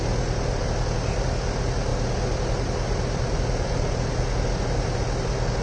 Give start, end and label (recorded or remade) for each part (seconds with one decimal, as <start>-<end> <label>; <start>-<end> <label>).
0.0-5.6 recorded